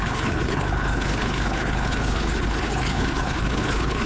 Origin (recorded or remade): remade